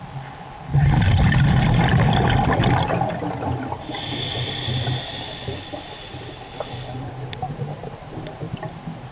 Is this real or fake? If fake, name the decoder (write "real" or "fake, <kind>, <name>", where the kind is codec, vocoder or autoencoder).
real